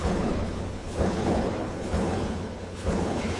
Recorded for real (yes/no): no